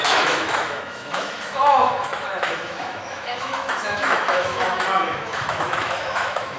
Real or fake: fake